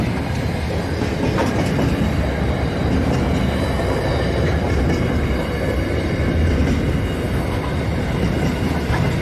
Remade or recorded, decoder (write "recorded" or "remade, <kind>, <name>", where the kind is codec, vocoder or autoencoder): recorded